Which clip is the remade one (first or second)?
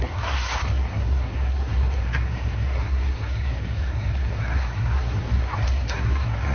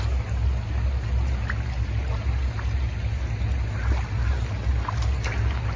first